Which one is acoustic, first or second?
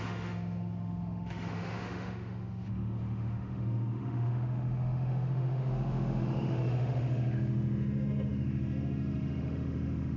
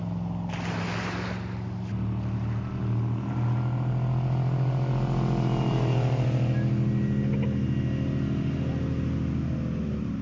second